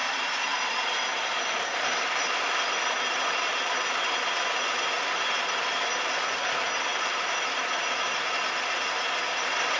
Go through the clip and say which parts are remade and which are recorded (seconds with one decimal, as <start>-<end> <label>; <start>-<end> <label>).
0.0-6.9 recorded; 6.9-7.6 remade; 7.6-9.8 recorded